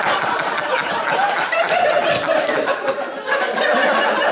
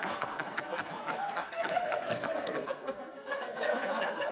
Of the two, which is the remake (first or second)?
second